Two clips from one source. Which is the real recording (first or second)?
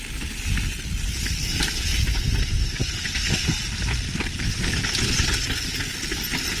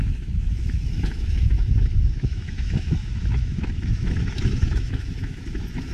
first